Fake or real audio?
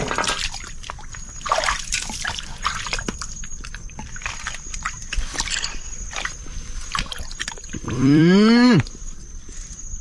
fake